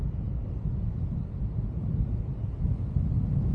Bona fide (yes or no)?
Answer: yes